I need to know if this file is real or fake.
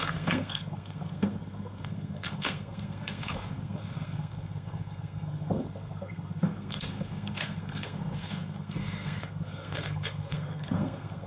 fake